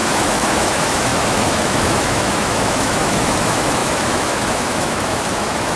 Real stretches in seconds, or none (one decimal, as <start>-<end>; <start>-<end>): none